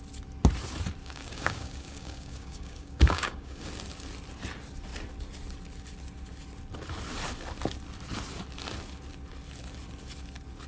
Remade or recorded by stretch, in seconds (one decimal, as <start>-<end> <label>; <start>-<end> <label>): 0.0-1.0 recorded; 1.0-3.7 remade; 3.7-10.7 recorded